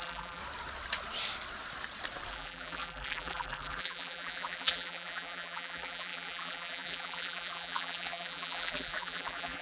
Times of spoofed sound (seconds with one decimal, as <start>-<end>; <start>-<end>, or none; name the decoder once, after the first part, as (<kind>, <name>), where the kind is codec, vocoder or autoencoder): 0.0-0.4 (vocoder, BigVGAN v2); 2.3-9.6